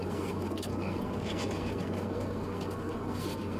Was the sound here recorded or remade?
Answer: remade